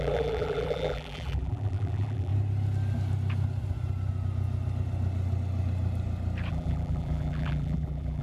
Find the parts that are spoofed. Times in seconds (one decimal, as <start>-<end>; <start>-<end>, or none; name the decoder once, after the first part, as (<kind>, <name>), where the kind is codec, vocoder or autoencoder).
0.0-2.3 (vocoder, BigVGAN v2); 6.5-8.2